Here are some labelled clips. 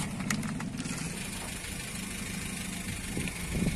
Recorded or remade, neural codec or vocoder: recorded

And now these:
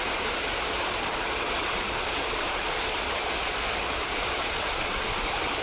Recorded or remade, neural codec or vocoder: recorded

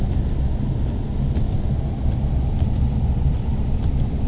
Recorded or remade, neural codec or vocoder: recorded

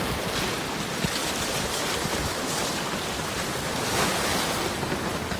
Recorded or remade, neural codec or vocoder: recorded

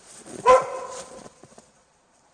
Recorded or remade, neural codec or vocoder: remade, vocoder, Vocos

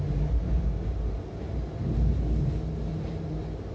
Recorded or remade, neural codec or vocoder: recorded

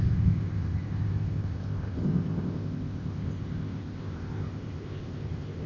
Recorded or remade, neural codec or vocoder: remade, codec, ZipCodec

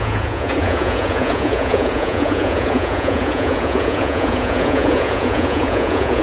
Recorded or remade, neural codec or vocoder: remade, vocoder, Vocos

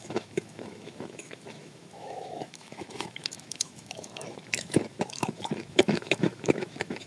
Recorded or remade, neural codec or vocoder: remade, autoencoder, DAC-VAE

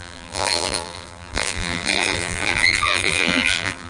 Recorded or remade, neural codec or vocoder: remade, vocoder, BigVGAN v2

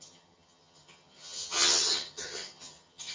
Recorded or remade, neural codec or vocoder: remade, vocoder, HiFi-GAN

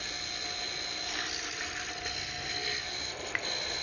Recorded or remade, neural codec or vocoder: recorded